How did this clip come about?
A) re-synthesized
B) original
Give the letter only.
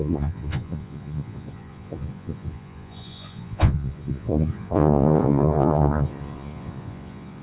A